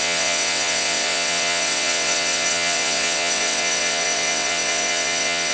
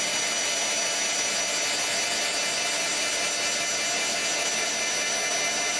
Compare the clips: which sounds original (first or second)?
second